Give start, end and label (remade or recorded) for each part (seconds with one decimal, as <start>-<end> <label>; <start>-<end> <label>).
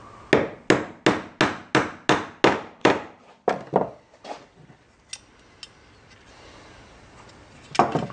0.0-2.8 recorded; 2.8-5.0 remade; 5.0-8.1 recorded